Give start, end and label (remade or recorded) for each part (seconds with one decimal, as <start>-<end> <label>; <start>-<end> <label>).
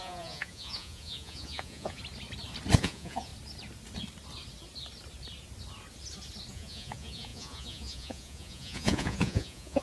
0.0-2.0 remade; 2.0-2.8 recorded; 2.8-3.3 remade; 3.3-6.5 recorded; 6.5-9.8 remade